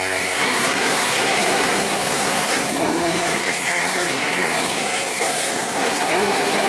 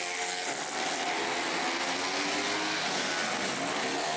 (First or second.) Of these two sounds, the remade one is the first